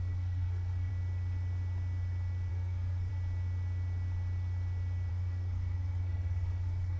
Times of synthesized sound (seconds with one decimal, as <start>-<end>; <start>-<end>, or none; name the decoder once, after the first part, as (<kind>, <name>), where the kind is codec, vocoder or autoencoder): 0.0-0.9 (codec, SNAC); 2.5-3.1; 5.1-7.0